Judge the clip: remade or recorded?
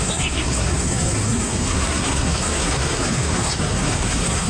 remade